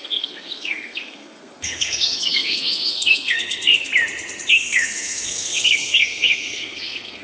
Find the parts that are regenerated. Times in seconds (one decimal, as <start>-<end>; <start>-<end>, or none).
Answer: 0.0-3.9; 4.5-7.2